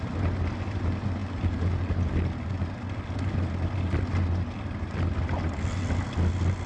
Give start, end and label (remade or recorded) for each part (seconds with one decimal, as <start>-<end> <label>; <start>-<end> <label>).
0.0-6.7 recorded